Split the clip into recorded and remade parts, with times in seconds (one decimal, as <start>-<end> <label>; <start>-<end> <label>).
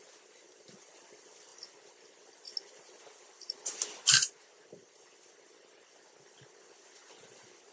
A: 0.0-7.7 recorded